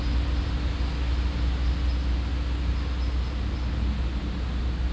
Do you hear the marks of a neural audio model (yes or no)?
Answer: no